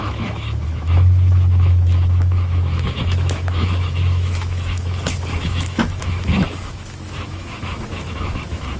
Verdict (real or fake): fake